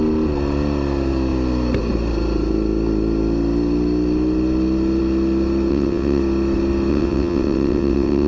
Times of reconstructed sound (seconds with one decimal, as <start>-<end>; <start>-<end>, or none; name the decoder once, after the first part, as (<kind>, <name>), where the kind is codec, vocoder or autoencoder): 5.7-6.2 (vocoder, WaveNeXt); 6.9-8.3